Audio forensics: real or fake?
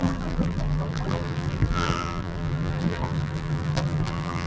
fake